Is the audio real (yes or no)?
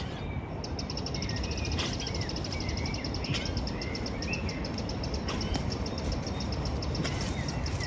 yes